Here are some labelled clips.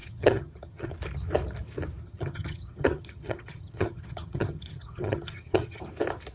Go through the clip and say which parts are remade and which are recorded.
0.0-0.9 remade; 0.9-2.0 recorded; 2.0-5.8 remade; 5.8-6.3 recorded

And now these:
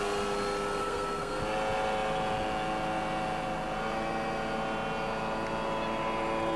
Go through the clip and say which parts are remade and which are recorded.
0.0-0.8 recorded; 0.8-1.4 remade; 1.4-6.6 recorded

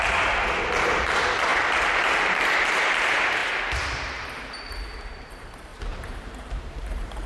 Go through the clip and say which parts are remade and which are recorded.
0.0-1.5 recorded; 1.5-2.8 remade; 2.8-5.7 recorded; 5.7-7.3 remade

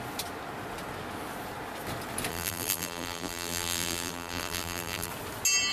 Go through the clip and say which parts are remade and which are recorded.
0.0-2.3 recorded; 2.3-5.1 remade; 5.1-5.7 recorded

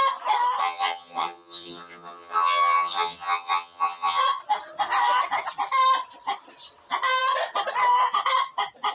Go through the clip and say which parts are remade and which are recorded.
0.0-0.6 recorded; 0.6-4.2 remade; 4.2-8.9 recorded

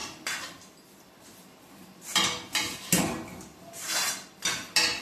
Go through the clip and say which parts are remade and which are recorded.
0.0-5.0 recorded

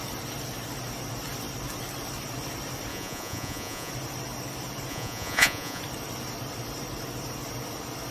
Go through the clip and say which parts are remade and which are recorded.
0.0-2.9 recorded; 2.9-3.9 remade; 3.9-4.9 recorded; 4.9-5.8 remade; 5.8-8.1 recorded

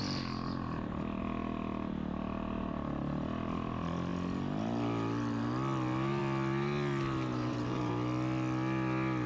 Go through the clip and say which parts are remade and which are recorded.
0.0-7.3 recorded; 7.3-7.9 remade; 7.9-9.3 recorded